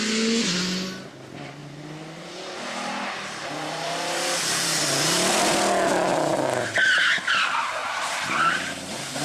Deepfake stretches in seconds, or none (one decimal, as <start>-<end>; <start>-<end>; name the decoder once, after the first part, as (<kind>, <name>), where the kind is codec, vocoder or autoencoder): 1.6-5.5 (vocoder, BigVGAN v2); 7.8-8.7